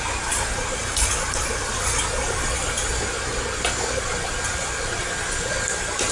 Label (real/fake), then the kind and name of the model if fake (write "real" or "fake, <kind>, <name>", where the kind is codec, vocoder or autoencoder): real